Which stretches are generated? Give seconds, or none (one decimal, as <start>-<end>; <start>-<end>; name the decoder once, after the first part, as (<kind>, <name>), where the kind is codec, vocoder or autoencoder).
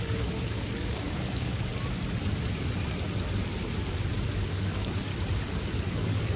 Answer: 0.0-1.7 (codec, DAC); 4.5-5.1; 5.8-6.4